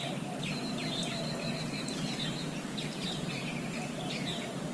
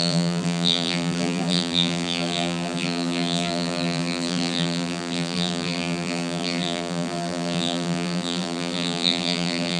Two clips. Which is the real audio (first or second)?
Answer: first